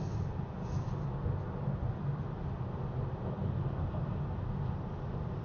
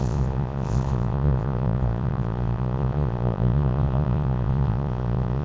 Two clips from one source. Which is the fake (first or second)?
second